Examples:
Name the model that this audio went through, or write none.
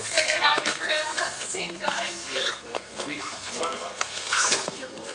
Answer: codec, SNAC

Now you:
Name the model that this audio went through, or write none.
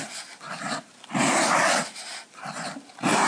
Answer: none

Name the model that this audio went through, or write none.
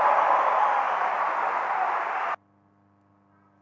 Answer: none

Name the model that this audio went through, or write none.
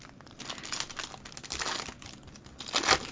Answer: none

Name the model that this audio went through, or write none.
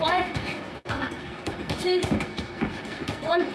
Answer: codec, SNAC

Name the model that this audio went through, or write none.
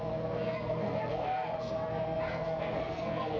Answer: codec, SNAC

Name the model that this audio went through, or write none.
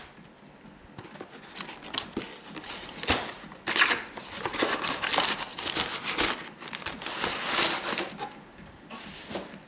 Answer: none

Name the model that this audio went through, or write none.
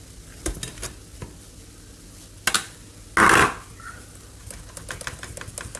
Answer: none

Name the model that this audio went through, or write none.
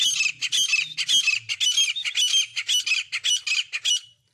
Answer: none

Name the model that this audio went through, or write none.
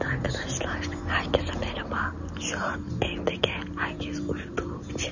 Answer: none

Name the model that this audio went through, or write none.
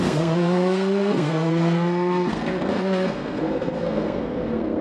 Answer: codec, SNAC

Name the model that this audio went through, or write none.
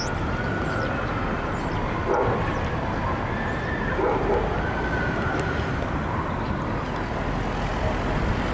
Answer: none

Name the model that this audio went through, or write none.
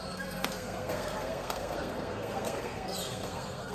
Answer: codec, SNAC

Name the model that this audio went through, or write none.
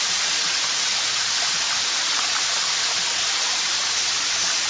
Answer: none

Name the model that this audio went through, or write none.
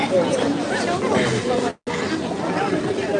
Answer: none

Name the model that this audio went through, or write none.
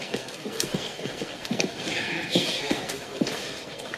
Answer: codec, SNAC